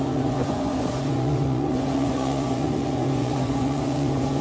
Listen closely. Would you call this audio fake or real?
fake